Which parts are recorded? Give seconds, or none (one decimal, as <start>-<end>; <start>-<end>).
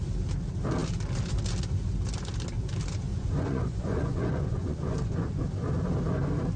0.0-3.1; 5.3-6.6